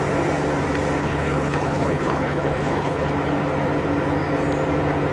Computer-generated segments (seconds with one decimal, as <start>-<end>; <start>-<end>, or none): 1.0-3.1